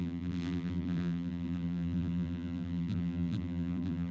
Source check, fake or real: fake